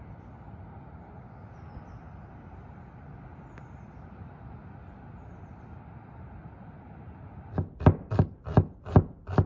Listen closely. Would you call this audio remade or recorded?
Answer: recorded